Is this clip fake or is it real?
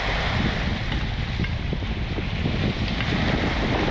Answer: real